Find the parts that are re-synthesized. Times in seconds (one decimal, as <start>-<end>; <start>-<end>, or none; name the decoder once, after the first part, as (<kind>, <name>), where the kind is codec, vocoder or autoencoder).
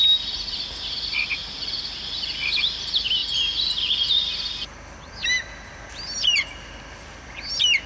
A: 1.4-2.0 (vocoder, BigVGAN v2)